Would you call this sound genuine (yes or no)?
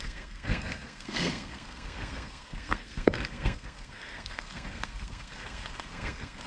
no